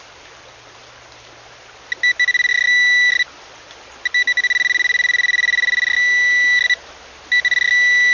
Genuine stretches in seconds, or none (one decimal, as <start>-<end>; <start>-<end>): 0.0-8.1